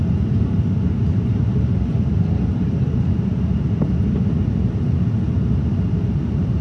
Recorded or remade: recorded